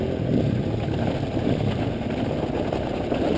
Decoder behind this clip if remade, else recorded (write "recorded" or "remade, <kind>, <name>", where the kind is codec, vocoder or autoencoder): recorded